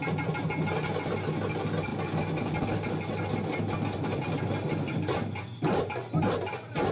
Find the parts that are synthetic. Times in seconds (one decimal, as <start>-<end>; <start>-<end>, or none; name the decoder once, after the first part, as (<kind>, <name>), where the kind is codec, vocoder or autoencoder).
none